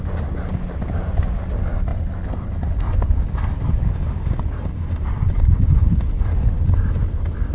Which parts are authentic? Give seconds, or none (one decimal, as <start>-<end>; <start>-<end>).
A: 0.0-7.5

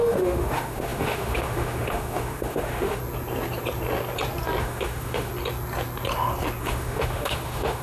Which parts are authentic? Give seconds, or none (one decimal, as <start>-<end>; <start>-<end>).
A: 3.0-4.6; 5.3-6.6

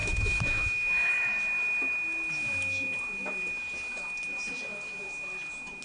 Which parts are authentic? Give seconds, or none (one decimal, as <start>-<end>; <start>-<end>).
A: 1.1-5.8